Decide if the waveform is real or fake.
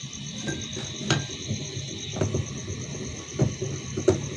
real